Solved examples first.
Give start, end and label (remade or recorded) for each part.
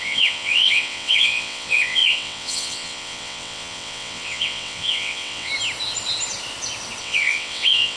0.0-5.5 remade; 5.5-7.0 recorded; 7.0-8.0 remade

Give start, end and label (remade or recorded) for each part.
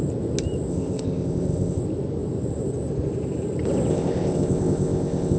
0.0-0.7 recorded; 0.7-1.8 remade; 1.8-3.9 recorded; 3.9-5.4 remade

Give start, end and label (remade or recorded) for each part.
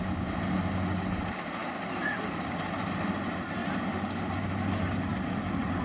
0.0-5.8 recorded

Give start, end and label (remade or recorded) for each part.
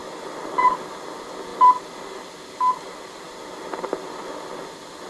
0.0-5.1 recorded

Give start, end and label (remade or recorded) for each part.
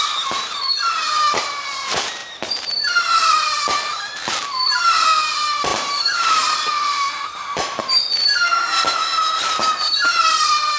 0.0-10.8 remade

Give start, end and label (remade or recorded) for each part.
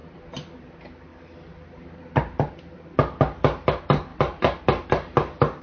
0.0-0.7 recorded; 0.7-1.1 remade; 1.1-3.2 recorded; 3.2-5.6 remade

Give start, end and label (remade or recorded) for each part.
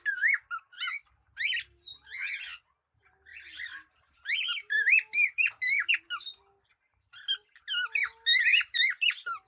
0.0-9.5 recorded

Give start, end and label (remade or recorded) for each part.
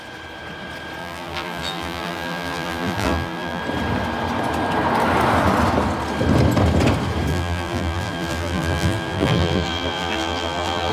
0.0-1.0 recorded; 1.0-3.6 remade; 3.6-7.3 recorded; 7.3-10.9 remade